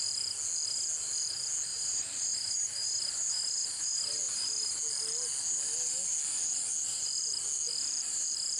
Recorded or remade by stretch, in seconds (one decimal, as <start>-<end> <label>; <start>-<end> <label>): 0.0-1.7 recorded; 1.7-4.8 remade; 4.8-8.6 recorded